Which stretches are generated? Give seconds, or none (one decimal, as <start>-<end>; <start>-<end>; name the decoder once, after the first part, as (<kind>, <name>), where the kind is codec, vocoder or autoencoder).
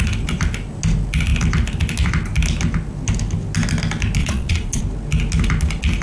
4.2-4.8 (vocoder, Vocos)